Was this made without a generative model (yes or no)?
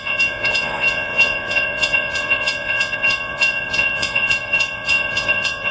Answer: no